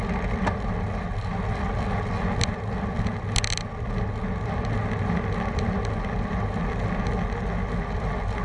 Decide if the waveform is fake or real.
real